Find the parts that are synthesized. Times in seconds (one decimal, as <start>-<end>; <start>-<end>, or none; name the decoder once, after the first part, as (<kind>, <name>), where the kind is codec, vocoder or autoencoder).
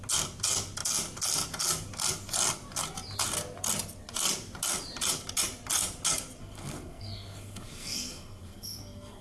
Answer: 6.4-9.2 (codec, SNAC)